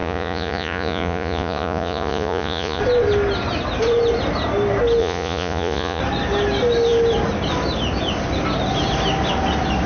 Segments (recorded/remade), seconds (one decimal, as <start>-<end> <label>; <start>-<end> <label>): 0.0-2.8 remade; 2.8-5.0 recorded; 5.0-6.0 remade; 6.0-9.9 recorded